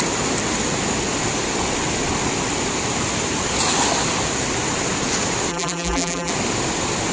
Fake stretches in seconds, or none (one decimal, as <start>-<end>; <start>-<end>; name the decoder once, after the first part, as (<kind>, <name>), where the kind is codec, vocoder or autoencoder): 5.5-6.3 (vocoder, BigVGAN v2)